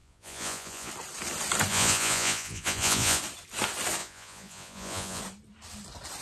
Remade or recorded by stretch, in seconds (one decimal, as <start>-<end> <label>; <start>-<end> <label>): 0.0-0.9 remade; 0.9-1.7 recorded; 1.7-3.2 remade; 3.2-4.0 recorded; 4.0-5.2 remade; 5.2-6.2 recorded